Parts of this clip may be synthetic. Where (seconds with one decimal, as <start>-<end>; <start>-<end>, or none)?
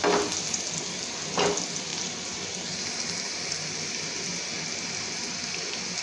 none